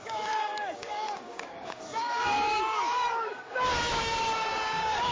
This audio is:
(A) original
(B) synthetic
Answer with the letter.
B